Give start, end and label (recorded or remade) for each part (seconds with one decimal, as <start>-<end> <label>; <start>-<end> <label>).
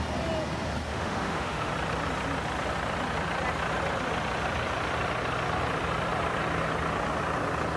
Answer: 0.0-0.9 recorded; 0.9-1.7 remade; 1.7-7.8 recorded